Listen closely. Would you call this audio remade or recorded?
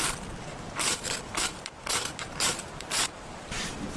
remade